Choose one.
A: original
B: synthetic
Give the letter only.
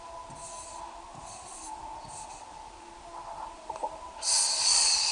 A